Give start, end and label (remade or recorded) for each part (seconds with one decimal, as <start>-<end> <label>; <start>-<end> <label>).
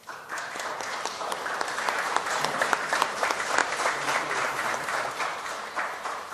0.0-6.3 remade